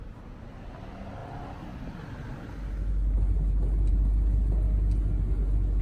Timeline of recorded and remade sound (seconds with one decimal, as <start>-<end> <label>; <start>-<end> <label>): 0.0-5.8 recorded